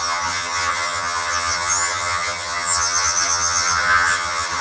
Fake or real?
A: fake